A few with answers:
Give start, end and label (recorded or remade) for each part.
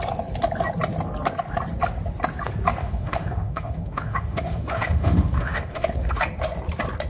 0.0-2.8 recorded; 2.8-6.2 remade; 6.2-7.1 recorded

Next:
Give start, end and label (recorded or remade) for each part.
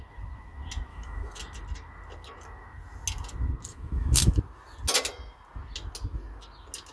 0.0-0.9 recorded; 0.9-1.4 remade; 1.4-3.7 recorded; 3.7-4.4 remade; 4.4-6.9 recorded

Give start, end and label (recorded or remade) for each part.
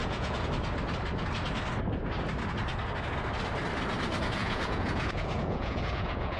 0.0-0.5 remade; 0.5-4.4 recorded; 4.4-6.4 remade